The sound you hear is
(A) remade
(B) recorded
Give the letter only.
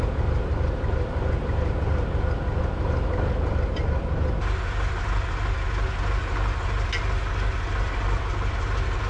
B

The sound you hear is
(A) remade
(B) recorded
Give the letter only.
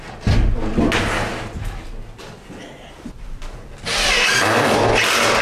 B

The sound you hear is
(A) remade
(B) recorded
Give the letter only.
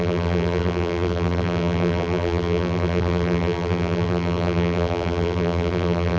A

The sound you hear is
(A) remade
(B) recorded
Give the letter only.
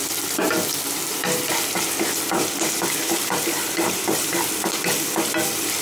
A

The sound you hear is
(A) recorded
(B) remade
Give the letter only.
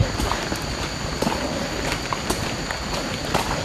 A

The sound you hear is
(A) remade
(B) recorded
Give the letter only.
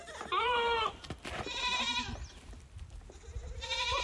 B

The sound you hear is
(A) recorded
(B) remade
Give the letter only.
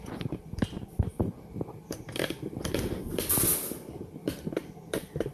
B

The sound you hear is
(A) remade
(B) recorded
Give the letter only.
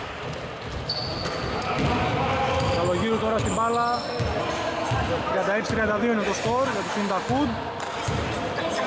B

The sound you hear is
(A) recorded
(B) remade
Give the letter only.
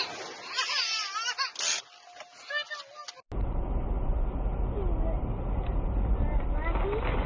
A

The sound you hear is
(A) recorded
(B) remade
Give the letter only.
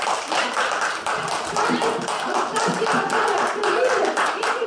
A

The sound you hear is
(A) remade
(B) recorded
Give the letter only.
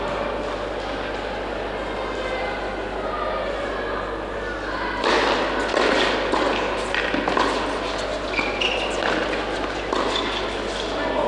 B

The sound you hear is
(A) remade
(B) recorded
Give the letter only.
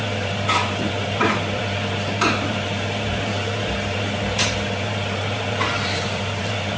A